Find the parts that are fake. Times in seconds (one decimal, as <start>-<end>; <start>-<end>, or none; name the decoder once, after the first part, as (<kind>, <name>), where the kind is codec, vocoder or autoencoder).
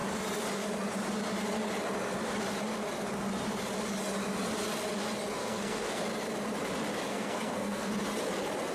5.4-6.0 (codec, SNAC); 7.1-7.9